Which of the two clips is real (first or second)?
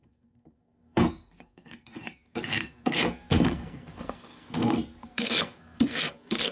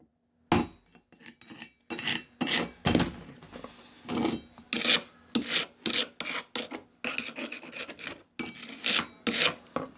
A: second